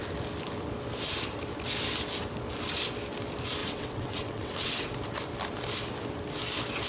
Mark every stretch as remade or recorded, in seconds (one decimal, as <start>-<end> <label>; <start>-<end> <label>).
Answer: 0.0-3.6 recorded; 3.6-4.9 remade; 4.9-6.9 recorded